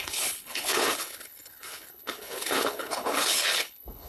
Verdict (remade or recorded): remade